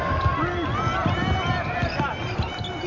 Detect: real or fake real